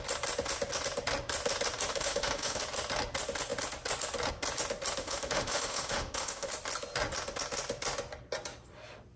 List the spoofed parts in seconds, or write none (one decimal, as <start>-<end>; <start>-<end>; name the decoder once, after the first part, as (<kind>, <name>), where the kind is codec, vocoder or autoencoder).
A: 1.9-2.6 (autoencoder, DAC-VAE); 5.0-6.5